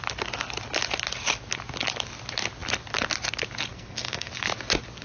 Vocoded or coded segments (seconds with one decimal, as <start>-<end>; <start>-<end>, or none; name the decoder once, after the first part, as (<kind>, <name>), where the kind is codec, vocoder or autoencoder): 3.7-4.3 (codec, SNAC)